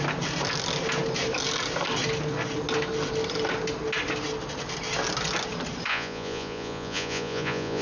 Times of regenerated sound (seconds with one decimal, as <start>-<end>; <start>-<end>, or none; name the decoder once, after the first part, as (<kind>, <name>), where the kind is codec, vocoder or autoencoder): 5.9-7.8 (vocoder, Vocos)